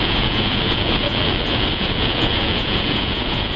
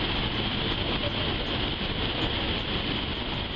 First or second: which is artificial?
first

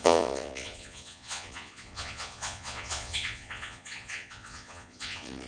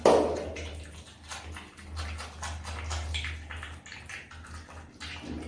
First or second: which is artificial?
first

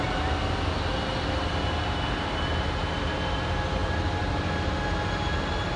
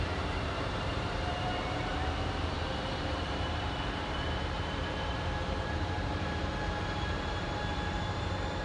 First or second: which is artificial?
second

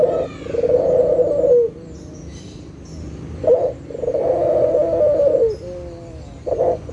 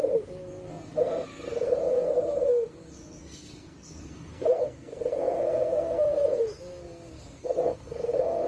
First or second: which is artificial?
second